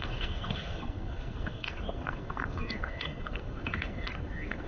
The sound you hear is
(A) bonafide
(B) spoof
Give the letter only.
B